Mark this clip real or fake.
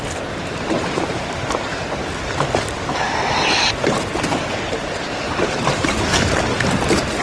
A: real